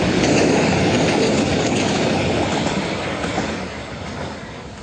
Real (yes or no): no